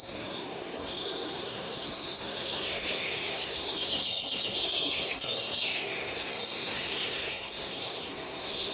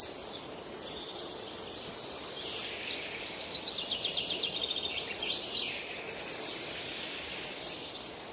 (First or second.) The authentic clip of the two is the second